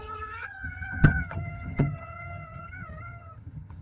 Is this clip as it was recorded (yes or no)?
no